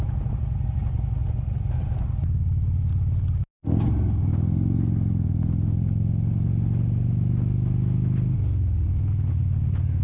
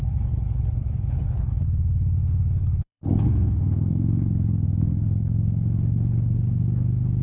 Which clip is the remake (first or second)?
second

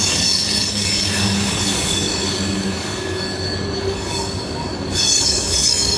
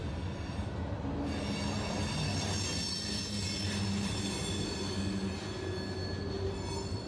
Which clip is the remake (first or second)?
first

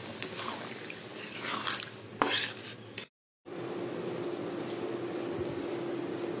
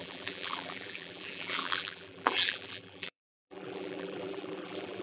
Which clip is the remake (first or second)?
second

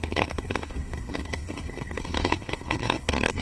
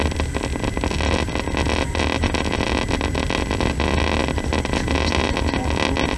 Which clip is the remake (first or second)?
first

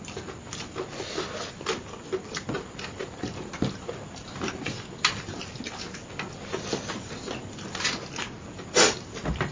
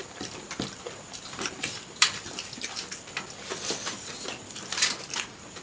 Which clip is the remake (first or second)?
second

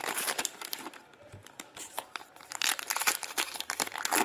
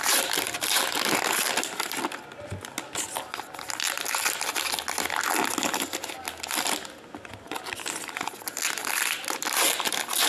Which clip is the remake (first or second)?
first